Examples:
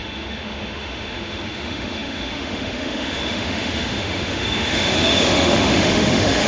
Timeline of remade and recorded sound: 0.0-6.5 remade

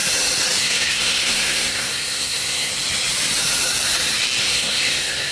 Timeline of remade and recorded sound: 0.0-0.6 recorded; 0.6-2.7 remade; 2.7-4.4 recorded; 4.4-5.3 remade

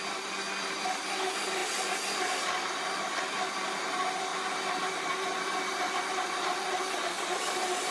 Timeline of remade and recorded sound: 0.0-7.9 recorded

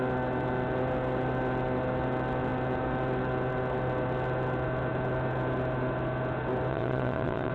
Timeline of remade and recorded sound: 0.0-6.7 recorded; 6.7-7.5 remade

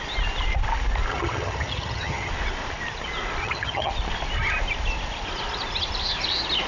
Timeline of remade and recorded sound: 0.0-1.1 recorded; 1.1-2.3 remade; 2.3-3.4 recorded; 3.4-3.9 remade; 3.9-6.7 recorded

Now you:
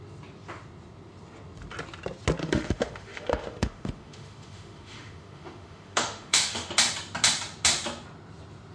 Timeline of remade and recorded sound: 0.0-2.4 recorded; 2.4-6.7 remade; 6.7-8.7 recorded

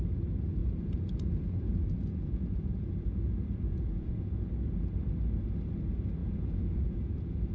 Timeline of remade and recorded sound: 0.0-0.6 recorded; 0.6-4.4 remade; 4.4-6.2 recorded; 6.2-7.5 remade

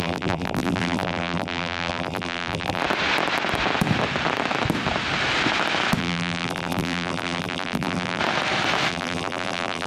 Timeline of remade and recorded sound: 0.0-2.8 remade; 2.8-6.0 recorded; 6.0-8.2 remade; 8.2-8.9 recorded; 8.9-9.9 remade